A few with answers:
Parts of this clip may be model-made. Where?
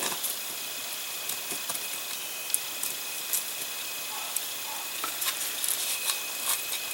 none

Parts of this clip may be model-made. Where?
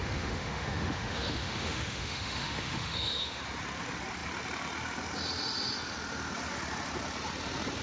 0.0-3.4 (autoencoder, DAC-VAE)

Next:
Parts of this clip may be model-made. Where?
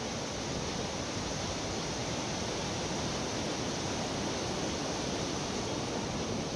none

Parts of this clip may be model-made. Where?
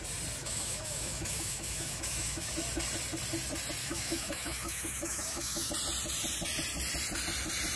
0.4-2.5 (autoencoder, DAC-VAE); 3.8-5.7